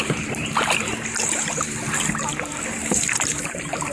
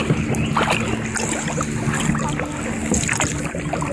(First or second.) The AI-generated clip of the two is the first